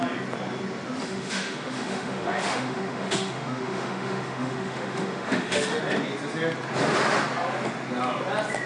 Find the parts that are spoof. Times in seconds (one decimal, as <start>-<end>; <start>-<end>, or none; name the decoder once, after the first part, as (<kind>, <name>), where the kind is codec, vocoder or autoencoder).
1.0-5.8 (autoencoder, DAC-VAE)

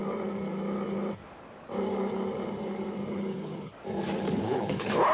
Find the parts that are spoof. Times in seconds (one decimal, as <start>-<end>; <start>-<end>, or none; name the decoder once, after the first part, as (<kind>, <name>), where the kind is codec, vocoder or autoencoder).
3.1-3.7 (codec, HILCodec); 4.4-5.1

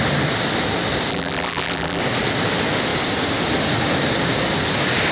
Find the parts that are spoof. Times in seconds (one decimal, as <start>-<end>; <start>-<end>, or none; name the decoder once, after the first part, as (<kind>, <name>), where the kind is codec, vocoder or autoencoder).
1.1-2.0 (vocoder, BigVGAN v2)

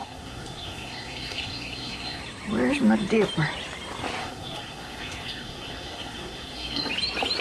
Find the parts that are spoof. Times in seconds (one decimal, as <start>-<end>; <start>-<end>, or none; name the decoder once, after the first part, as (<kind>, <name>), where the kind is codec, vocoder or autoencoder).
0.0-2.2 (codec, SNAC); 4.2-6.9

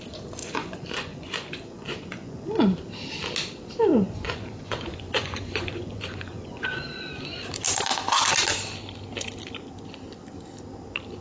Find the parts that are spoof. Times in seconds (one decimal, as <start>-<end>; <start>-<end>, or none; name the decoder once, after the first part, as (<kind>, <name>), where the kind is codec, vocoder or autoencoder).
0.4-2.8 (vocoder, Vocos); 3.9-7.4

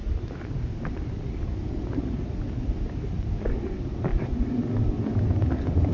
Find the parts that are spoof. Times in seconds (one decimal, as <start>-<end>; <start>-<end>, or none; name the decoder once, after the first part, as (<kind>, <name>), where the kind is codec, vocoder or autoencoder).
none

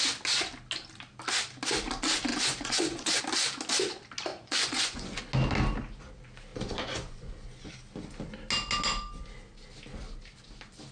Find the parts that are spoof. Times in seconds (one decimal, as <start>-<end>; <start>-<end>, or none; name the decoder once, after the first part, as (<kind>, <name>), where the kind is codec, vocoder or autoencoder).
2.3-3.2 (vocoder, Vocos); 4.3-5.2; 6.5-7.7

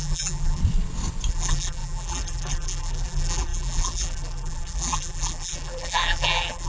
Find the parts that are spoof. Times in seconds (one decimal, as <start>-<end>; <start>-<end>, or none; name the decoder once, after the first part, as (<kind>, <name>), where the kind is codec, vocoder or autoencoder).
0.0-0.6 (vocoder, BigVGAN v2); 1.3-6.7